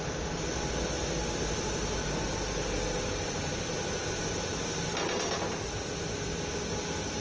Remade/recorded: recorded